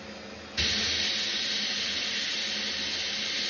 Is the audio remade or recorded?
recorded